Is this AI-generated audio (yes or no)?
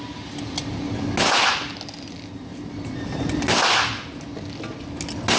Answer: no